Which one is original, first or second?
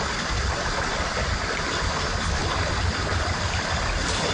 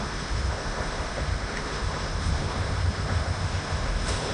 first